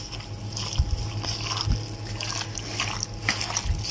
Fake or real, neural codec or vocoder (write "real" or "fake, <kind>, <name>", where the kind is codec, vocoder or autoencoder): real